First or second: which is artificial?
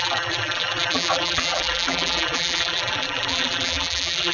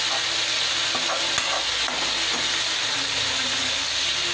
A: first